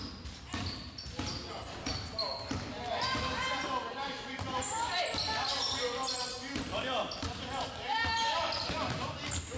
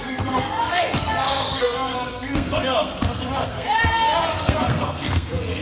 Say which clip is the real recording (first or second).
first